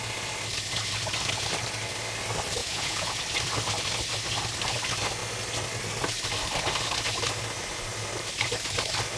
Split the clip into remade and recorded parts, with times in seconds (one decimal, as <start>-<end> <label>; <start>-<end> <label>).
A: 0.0-2.6 recorded; 2.6-3.2 remade; 3.2-9.2 recorded